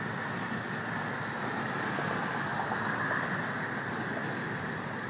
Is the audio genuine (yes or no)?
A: yes